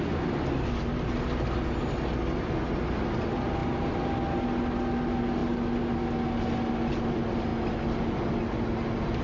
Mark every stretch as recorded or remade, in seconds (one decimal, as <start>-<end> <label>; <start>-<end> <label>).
0.0-9.2 recorded